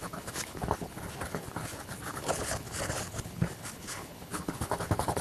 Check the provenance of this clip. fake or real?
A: fake